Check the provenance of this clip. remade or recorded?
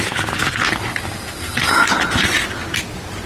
recorded